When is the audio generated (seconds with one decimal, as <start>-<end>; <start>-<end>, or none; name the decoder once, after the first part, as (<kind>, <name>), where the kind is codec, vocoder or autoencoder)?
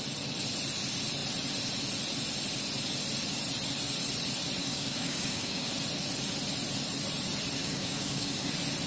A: 4.6-5.7 (codec, DAC); 7.6-8.5